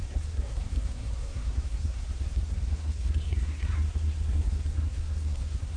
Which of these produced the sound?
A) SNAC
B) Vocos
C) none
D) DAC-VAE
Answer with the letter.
A